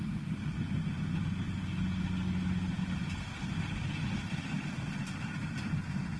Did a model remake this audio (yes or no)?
no